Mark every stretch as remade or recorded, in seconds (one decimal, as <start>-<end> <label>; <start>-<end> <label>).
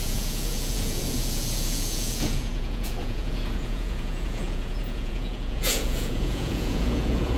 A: 0.0-7.4 remade